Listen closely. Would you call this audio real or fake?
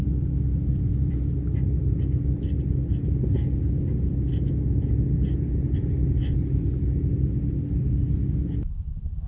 real